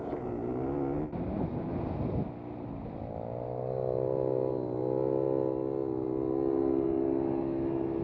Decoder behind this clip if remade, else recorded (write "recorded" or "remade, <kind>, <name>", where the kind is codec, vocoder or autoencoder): recorded